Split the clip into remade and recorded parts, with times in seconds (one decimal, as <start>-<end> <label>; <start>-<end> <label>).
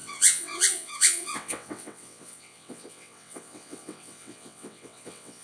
0.0-5.4 remade